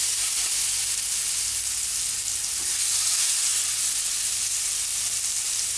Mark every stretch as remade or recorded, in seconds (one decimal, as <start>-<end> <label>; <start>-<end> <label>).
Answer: 0.0-5.8 recorded